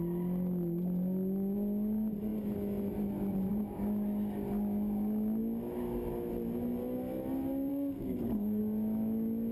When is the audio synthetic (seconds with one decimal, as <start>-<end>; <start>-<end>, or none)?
7.7-8.6